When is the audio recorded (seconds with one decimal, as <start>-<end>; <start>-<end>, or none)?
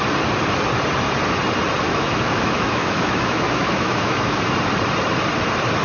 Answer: 0.0-1.9; 4.4-5.8